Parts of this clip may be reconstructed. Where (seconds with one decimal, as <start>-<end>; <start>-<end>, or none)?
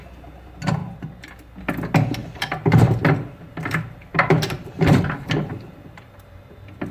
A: 2.2-2.8; 4.1-6.4